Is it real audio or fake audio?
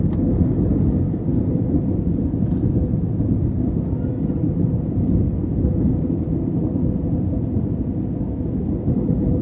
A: real